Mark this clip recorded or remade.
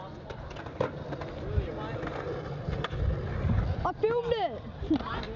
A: recorded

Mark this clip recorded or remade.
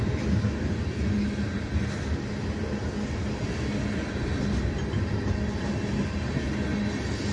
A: recorded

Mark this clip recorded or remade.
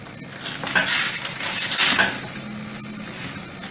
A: recorded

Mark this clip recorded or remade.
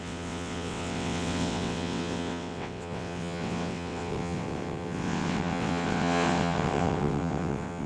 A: remade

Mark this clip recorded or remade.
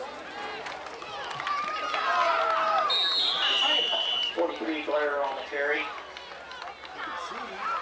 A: recorded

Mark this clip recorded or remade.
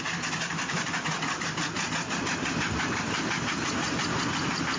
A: recorded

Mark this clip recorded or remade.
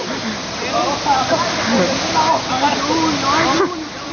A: recorded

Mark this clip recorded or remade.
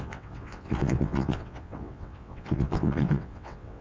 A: remade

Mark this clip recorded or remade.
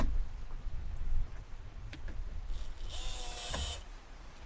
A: recorded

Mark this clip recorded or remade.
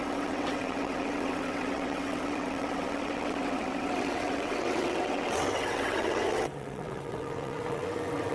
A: remade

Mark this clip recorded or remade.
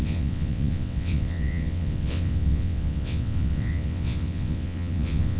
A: remade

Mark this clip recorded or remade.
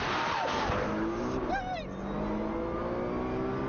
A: recorded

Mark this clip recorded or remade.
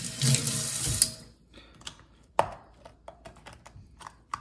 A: recorded